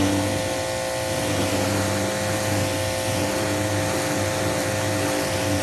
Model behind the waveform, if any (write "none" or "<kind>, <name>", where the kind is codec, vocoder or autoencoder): none